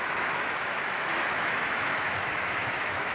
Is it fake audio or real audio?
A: fake